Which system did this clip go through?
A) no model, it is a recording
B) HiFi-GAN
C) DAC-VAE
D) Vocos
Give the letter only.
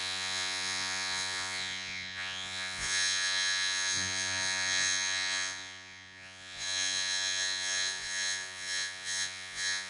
D